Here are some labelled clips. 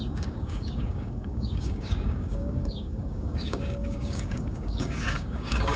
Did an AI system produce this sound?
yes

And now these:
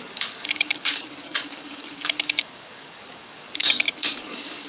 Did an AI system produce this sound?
yes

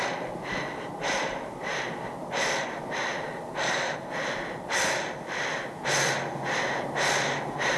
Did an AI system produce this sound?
no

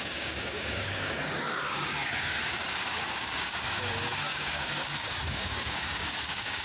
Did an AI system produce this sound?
yes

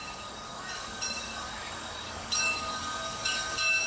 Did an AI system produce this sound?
yes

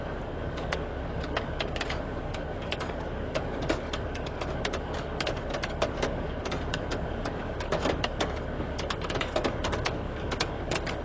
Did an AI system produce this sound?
yes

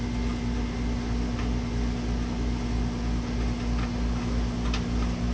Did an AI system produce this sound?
no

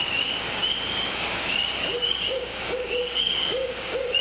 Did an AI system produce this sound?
yes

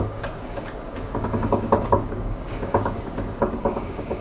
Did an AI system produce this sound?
yes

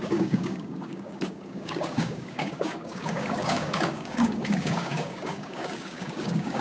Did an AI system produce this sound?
yes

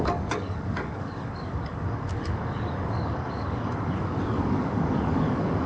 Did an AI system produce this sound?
yes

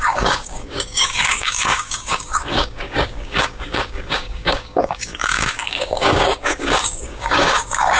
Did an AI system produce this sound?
yes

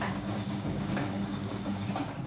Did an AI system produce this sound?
yes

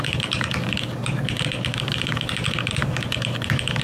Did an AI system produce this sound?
yes